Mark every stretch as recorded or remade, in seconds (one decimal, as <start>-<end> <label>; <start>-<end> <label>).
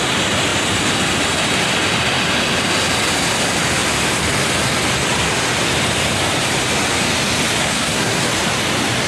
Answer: 0.0-7.6 recorded; 7.6-8.2 remade; 8.2-9.1 recorded